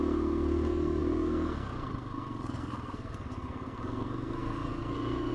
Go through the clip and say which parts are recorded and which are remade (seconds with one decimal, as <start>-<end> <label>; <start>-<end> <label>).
0.0-5.3 remade